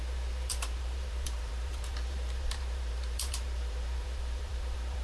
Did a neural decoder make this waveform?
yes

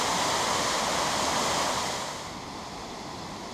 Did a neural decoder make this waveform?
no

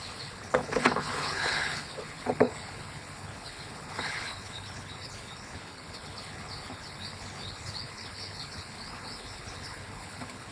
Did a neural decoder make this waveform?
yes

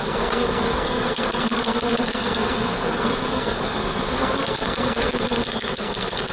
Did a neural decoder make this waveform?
yes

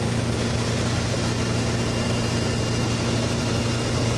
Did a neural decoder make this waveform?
no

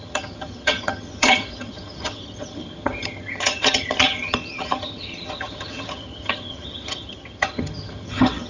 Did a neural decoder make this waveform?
yes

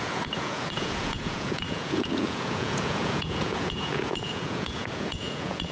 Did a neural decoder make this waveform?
yes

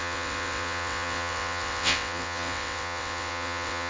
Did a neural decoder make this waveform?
yes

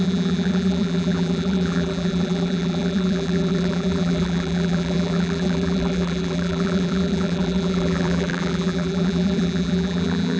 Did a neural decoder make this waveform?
yes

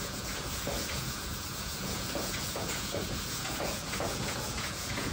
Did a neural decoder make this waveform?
yes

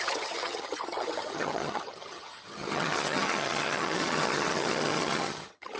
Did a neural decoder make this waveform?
yes